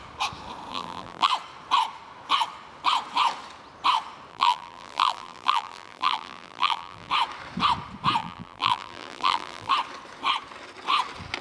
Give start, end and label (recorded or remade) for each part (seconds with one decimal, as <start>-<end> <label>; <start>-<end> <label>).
0.0-0.7 recorded; 0.7-1.3 remade; 1.3-4.3 recorded; 4.3-7.1 remade; 7.1-8.2 recorded; 8.2-9.7 remade; 9.7-11.4 recorded